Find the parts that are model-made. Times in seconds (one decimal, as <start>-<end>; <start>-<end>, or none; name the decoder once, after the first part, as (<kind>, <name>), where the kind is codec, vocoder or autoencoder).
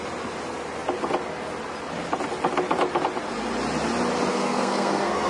4.3-5.3 (codec, SNAC)